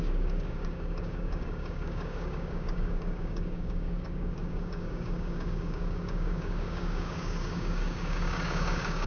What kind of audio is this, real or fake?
fake